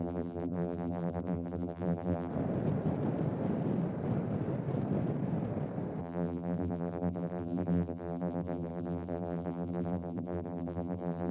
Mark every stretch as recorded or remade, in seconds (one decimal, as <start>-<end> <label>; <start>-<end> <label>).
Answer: 0.0-2.3 remade; 2.3-6.0 recorded; 6.0-11.3 remade

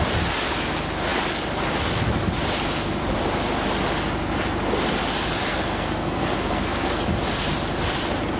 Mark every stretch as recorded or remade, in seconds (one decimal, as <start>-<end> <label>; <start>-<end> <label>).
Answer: 0.0-5.5 recorded; 5.5-7.1 remade; 7.1-8.4 recorded

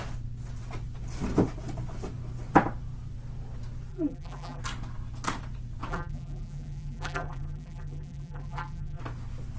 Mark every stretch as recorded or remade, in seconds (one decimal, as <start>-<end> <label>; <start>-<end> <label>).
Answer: 0.0-3.9 recorded; 3.9-4.6 remade; 4.6-5.9 recorded; 5.9-9.0 remade; 9.0-9.6 recorded

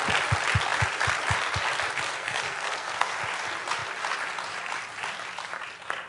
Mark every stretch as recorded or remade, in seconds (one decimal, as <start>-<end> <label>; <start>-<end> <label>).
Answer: 0.0-2.1 recorded; 2.1-3.1 remade; 3.1-6.1 recorded

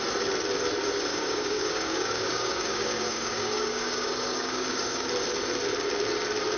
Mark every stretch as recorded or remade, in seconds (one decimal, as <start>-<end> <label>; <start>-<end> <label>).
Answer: 0.0-1.1 recorded; 1.1-5.1 remade; 5.1-6.6 recorded